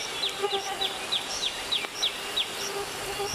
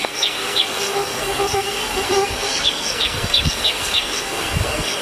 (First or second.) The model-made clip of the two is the second